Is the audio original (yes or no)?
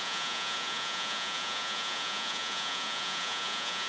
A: no